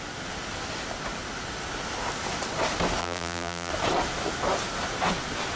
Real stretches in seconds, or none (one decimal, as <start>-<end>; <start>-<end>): 0.0-3.0; 3.7-5.6